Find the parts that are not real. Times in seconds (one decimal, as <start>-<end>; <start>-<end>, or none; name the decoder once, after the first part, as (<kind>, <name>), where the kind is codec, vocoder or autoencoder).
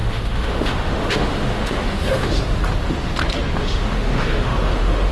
0.0-2.4 (autoencoder, DAC-VAE); 3.6-5.1